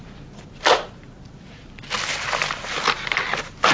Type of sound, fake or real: real